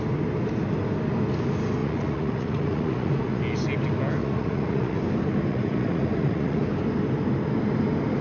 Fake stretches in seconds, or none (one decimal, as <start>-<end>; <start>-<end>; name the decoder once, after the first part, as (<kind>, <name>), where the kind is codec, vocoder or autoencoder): 1.8-3.4 (vocoder, Vocos); 4.2-5.0; 5.5-6.6